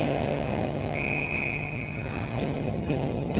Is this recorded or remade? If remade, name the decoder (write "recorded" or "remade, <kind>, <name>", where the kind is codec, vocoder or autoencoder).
remade, vocoder, HiFi-GAN